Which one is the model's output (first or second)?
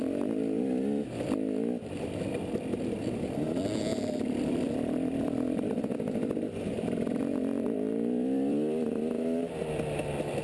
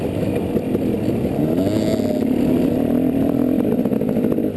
first